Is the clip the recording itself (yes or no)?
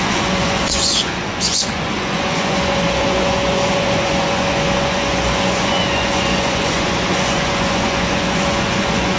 no